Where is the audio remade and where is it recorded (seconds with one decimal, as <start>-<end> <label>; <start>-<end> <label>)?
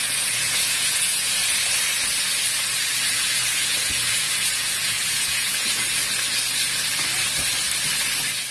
0.0-1.4 remade; 1.4-3.1 recorded; 3.1-6.0 remade; 6.0-8.5 recorded